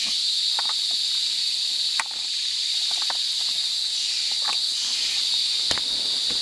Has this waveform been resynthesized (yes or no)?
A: no